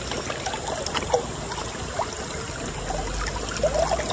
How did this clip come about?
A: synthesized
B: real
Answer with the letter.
B